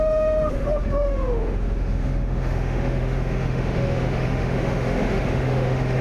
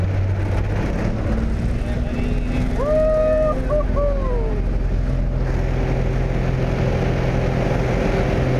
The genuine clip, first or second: second